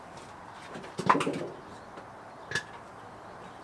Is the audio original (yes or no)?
yes